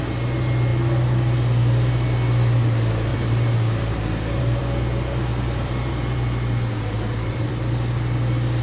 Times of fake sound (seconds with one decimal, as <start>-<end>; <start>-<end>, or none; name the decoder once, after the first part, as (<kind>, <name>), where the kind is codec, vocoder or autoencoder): 3.1-4.6 (vocoder, BigVGAN v2); 5.3-7.5